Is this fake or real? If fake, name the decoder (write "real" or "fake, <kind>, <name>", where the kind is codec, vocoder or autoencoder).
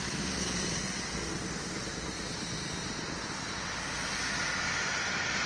real